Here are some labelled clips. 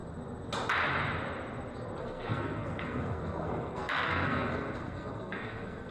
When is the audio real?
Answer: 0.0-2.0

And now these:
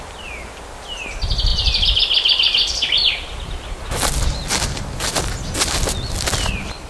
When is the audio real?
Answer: 0.0-6.9

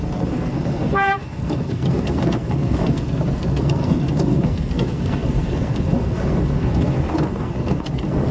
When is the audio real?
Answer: none

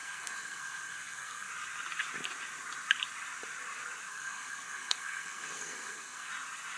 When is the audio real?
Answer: 1.5-4.1; 6.3-6.8

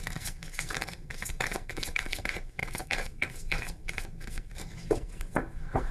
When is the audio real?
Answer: none